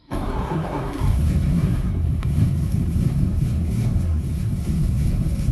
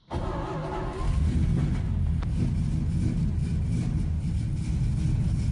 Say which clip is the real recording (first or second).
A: second